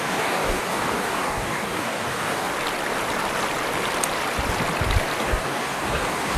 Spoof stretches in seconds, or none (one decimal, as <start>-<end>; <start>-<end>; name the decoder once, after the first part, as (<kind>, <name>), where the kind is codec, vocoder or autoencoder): 0.0-2.5 (codec, DAC); 5.2-6.4